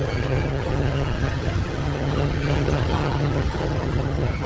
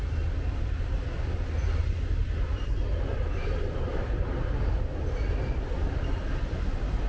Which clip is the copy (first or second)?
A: first